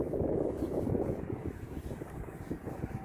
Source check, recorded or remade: remade